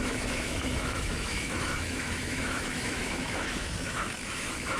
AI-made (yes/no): yes